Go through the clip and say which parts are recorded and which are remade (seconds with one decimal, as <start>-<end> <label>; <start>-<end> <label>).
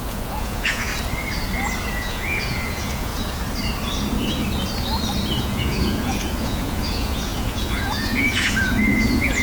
0.0-0.9 remade; 0.9-1.9 recorded; 1.9-3.1 remade; 3.1-5.4 recorded; 5.4-9.4 remade